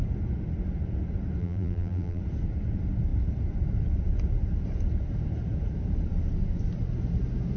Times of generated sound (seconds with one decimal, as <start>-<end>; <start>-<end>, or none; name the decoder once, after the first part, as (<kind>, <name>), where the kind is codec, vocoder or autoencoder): 1.4-2.2 (vocoder, BigVGAN v2)